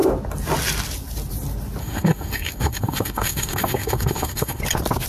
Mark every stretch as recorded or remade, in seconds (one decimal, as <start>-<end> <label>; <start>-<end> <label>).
0.0-1.8 recorded; 1.8-4.6 remade; 4.6-5.1 recorded